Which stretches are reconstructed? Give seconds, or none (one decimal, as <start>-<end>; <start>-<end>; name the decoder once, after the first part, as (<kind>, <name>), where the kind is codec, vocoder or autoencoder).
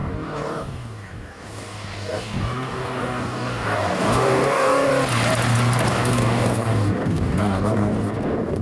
0.0-4.9 (codec, DAC); 5.9-8.6